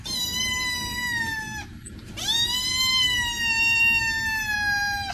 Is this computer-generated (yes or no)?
no